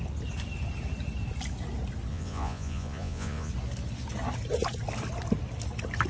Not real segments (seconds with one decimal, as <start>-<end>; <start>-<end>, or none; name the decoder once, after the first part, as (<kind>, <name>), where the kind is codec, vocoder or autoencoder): 2.1-3.5 (vocoder, Vocos)